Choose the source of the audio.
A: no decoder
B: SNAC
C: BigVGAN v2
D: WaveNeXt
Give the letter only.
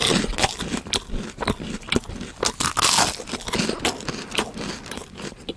A